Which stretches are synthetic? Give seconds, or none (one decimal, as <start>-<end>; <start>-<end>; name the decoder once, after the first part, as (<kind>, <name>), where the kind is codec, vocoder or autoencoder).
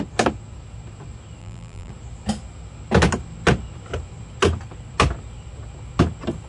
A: 1.4-1.9 (vocoder, BigVGAN v2)